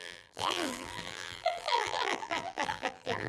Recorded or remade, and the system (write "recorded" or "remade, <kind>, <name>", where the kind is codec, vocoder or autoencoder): remade, vocoder, BigVGAN v2